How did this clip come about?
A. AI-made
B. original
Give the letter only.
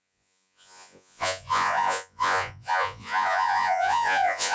A